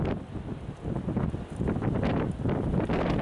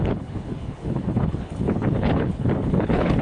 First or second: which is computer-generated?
second